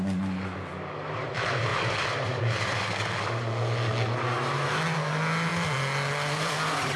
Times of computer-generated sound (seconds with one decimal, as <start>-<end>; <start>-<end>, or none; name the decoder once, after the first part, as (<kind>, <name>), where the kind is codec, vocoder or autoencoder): none